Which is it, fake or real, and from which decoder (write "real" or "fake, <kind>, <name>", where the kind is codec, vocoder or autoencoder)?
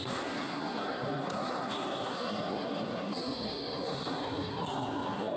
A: fake, codec, SNAC